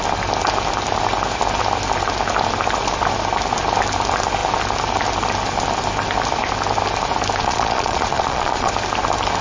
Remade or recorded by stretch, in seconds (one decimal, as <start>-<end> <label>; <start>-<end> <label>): 0.0-7.4 recorded; 7.4-8.7 remade; 8.7-9.4 recorded